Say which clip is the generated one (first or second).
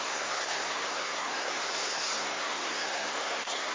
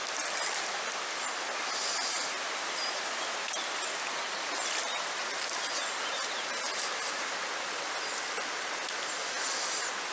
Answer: first